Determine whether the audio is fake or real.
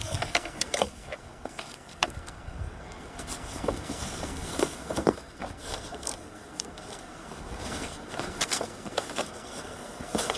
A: fake